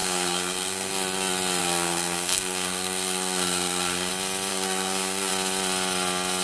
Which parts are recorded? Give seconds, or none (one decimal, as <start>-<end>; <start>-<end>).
0.9-1.6; 4.1-4.5; 5.3-6.4